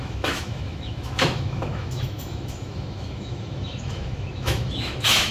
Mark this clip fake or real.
fake